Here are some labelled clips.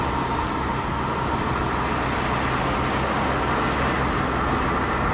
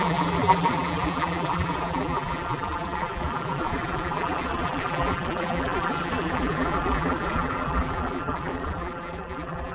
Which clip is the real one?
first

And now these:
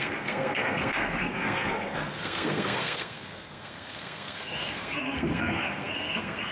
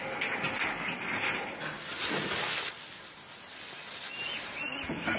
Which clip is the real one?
second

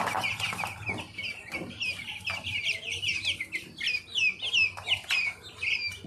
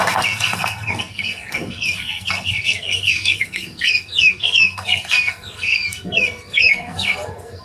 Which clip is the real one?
first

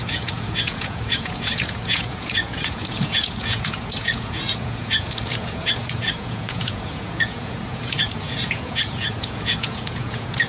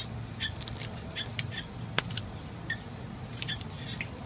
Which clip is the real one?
second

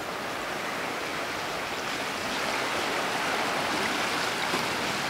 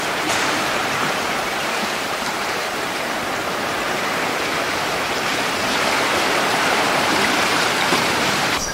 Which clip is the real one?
first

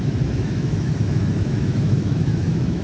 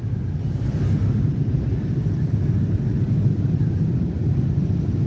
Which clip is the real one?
second